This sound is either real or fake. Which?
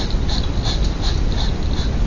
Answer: real